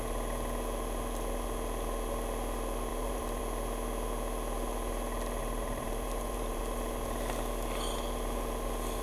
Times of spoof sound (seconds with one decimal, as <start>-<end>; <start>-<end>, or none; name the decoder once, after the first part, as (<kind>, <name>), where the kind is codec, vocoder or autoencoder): 2.9-3.4 (vocoder, BigVGAN v2); 5.4-6.6